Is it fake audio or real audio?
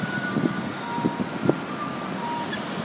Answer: real